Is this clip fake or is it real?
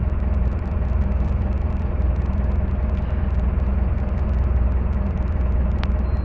real